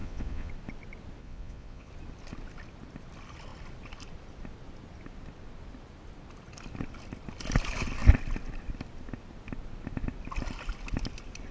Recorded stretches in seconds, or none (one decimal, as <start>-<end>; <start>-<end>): 0.5-1.2; 1.9-11.5